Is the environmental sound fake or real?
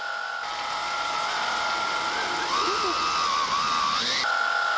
real